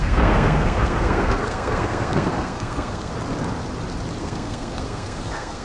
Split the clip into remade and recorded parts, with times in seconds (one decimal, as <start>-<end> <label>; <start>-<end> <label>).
0.0-3.1 remade; 3.1-4.2 recorded; 4.2-5.6 remade